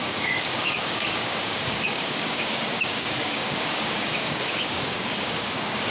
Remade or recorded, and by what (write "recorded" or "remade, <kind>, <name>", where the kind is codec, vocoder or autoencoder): remade, codec, DAC